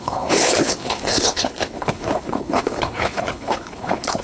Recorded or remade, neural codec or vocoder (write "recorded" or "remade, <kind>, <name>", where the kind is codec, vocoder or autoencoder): remade, codec, HILCodec